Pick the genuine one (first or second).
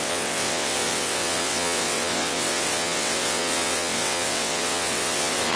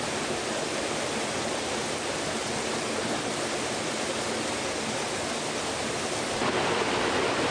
second